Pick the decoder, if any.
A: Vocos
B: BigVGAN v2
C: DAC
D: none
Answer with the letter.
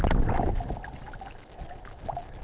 D